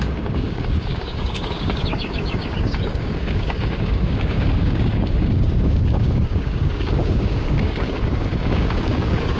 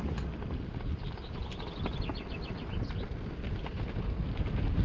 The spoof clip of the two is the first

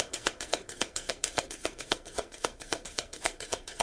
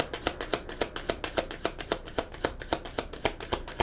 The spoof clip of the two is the first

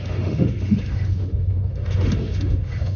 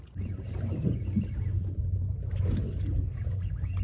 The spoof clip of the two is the first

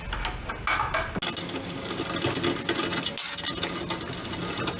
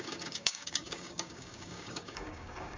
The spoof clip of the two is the second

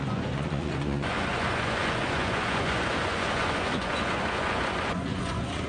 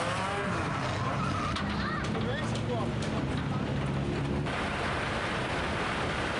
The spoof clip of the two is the first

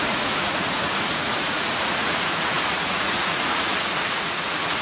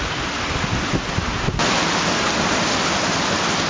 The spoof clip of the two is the first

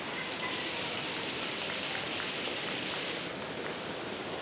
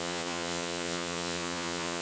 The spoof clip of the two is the second